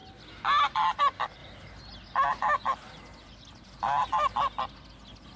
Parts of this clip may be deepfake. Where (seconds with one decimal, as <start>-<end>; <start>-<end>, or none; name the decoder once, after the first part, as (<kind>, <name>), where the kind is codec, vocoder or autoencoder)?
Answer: none